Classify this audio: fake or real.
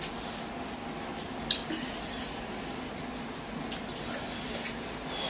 real